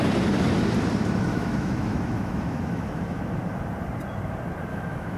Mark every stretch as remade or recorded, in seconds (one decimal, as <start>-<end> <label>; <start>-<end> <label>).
0.0-1.3 recorded; 1.3-3.2 remade; 3.2-4.7 recorded; 4.7-5.2 remade